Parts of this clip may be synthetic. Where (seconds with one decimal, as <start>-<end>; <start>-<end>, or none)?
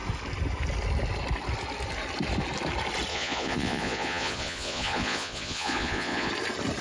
3.1-6.3